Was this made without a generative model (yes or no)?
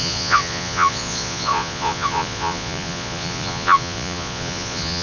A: no